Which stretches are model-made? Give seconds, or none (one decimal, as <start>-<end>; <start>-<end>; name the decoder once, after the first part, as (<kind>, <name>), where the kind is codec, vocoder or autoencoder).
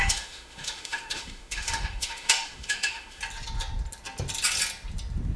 0.0-3.2 (autoencoder, DAC-VAE)